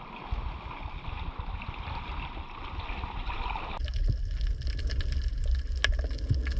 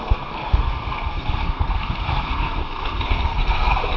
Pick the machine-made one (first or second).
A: second